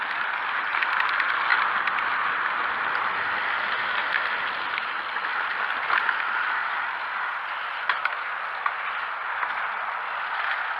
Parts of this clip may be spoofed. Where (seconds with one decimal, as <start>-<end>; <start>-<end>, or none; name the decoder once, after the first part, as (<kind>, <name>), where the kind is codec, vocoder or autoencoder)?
none